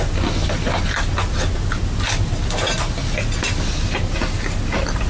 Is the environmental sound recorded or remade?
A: recorded